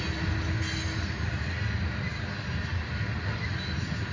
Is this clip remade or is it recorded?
recorded